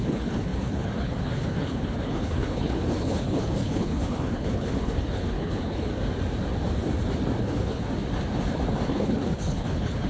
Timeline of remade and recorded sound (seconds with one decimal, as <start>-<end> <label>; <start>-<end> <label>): 0.0-5.9 remade; 5.9-7.4 recorded; 7.4-7.9 remade; 7.9-8.9 recorded; 8.9-10.1 remade